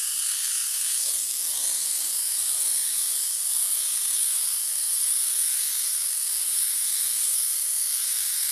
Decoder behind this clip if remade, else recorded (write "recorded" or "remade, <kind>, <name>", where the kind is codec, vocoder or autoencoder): remade, codec, SNAC